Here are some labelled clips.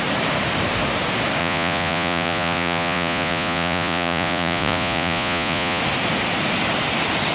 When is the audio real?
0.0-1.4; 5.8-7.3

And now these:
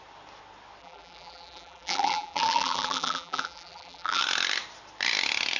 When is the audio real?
0.0-0.8; 4.2-5.6